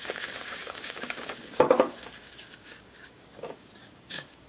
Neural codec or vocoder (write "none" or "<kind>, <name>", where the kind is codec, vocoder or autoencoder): codec, DAC